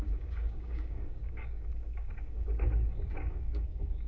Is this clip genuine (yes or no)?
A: no